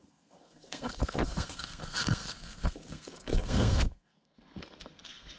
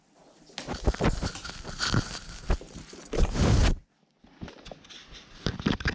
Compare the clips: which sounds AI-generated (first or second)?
first